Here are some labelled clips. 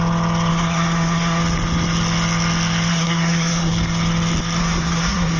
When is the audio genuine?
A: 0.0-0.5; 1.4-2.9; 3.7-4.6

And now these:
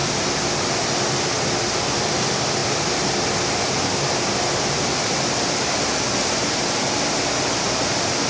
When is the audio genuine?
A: 0.0-8.3

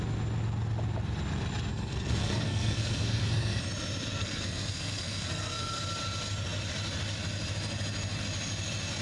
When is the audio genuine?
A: 0.0-1.7; 3.6-4.2; 5.8-9.0

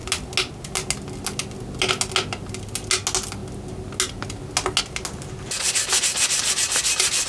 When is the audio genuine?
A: 0.0-7.3

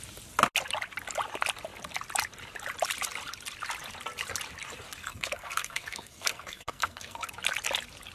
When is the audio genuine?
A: 0.0-5.0; 7.3-8.1

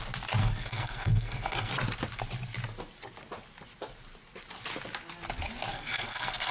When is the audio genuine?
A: 0.0-0.4; 1.7-5.7